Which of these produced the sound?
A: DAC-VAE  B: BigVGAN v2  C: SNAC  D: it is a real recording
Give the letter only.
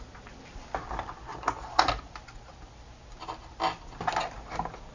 D